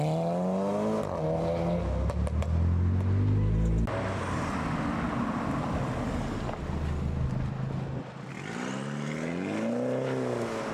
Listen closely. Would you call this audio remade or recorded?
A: recorded